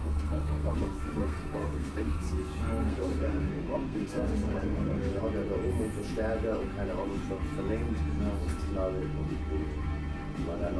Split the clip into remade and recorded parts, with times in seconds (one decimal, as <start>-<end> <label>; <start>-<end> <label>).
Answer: 0.0-2.3 remade; 2.3-2.8 recorded; 2.8-5.2 remade; 5.2-10.8 recorded